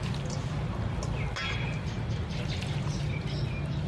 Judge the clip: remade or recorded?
recorded